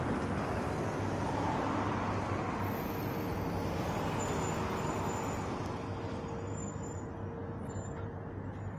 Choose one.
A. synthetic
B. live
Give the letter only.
B